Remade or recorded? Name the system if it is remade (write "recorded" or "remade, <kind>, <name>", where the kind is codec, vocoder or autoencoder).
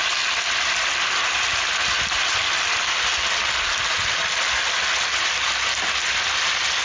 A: recorded